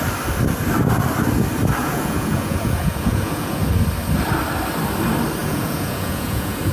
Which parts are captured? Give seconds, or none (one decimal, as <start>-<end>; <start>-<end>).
0.0-1.8; 3.6-5.4